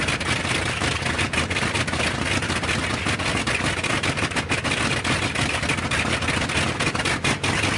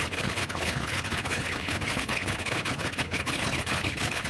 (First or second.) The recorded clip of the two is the first